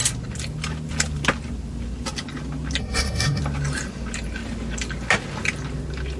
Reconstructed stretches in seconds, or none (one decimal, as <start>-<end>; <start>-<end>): 2.8-3.4